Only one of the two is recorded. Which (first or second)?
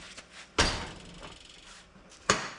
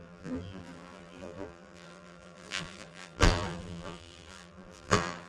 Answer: first